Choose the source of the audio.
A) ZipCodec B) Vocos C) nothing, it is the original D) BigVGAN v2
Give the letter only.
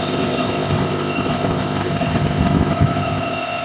A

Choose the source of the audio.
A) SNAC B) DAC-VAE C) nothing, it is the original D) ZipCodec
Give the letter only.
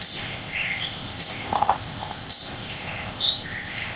D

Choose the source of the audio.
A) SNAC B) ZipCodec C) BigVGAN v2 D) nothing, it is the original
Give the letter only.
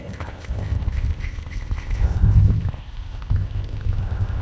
B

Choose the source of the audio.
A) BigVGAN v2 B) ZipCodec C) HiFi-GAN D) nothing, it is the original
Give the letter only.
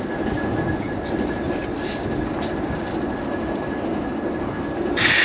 D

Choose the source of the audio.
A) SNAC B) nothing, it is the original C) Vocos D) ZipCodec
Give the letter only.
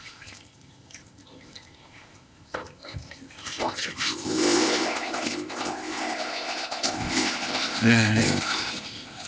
D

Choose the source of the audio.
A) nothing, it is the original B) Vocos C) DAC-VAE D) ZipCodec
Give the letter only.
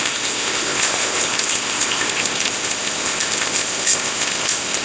D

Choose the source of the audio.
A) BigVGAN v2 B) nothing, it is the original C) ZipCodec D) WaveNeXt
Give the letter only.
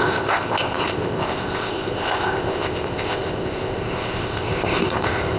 C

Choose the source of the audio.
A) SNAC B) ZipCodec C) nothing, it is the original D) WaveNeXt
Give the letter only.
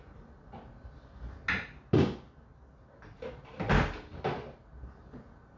C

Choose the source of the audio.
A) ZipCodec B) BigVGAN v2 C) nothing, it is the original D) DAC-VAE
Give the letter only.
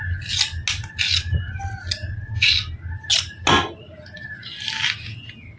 C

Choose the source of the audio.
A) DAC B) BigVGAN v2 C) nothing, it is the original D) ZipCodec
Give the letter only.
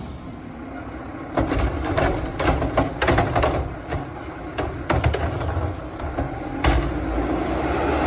C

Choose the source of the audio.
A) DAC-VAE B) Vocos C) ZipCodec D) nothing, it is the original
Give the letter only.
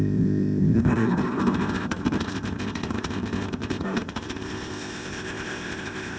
C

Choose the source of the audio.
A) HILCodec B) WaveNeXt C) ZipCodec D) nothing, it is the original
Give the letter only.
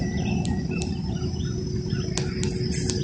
D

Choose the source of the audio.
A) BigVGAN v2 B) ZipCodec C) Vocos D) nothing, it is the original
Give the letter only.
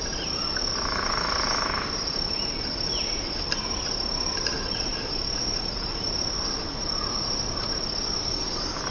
D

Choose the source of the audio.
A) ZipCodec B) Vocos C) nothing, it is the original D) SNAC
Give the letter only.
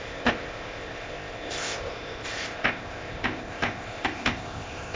A